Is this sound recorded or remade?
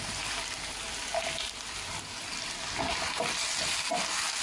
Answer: recorded